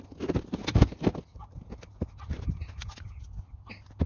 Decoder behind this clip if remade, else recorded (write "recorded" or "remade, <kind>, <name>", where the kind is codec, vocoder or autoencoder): recorded